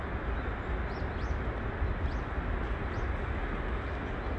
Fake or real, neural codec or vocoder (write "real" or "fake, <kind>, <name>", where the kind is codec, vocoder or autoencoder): real